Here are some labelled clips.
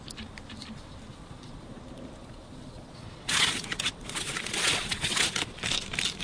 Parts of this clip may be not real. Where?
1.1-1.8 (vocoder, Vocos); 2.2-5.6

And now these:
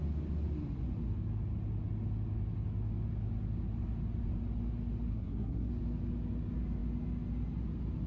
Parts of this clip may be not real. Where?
5.1-5.7 (codec, SNAC)

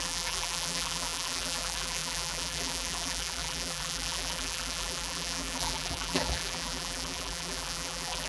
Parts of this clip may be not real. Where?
0.0-8.3 (vocoder, BigVGAN v2)

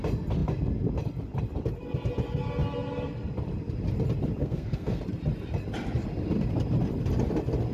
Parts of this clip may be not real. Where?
4.4-5.0 (codec, SNAC)

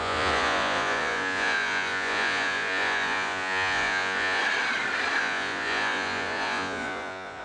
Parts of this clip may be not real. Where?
0.0-4.4 (vocoder, Vocos); 5.2-7.4

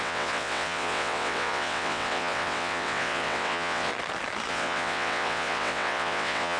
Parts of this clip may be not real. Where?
0.0-3.9 (vocoder, WaveNeXt); 4.5-6.6

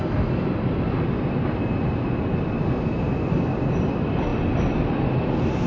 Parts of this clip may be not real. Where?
none